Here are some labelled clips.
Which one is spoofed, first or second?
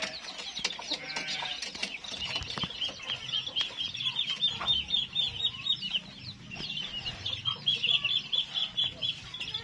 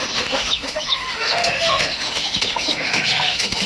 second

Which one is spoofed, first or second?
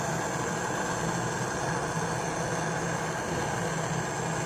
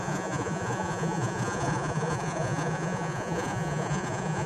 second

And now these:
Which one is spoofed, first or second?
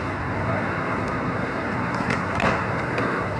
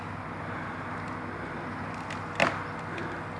first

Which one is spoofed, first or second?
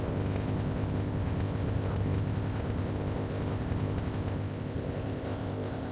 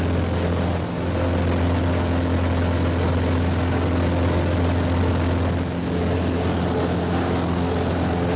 first